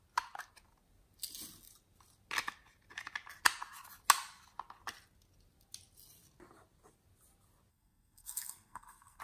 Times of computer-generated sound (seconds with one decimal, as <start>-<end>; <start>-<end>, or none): 7.7-9.2